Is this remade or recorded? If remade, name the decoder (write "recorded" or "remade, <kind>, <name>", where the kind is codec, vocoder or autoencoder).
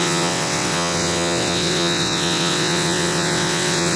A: remade, vocoder, WaveNeXt